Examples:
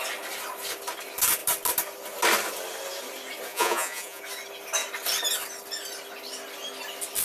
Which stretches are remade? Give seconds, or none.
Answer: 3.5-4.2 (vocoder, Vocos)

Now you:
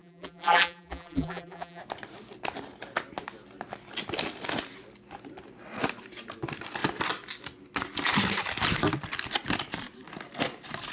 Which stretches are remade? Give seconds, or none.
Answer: 0.0-1.8 (vocoder, BigVGAN v2)

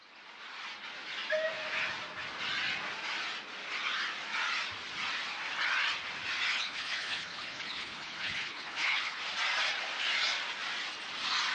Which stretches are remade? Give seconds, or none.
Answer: 6.5-9.2 (codec, HILCodec)

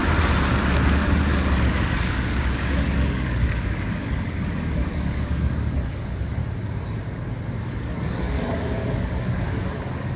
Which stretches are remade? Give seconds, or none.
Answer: 0.6-6.4 (codec, DAC); 7.6-10.2

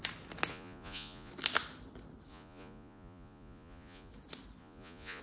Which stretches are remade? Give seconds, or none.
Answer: 0.5-1.3 (vocoder, Vocos); 2.3-4.1; 4.6-5.2